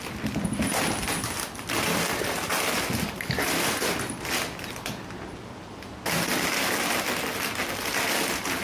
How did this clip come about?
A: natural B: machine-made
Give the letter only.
A